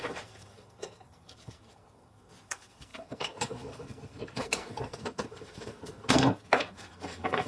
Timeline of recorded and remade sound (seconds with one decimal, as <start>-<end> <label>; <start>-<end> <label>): 0.0-7.5 remade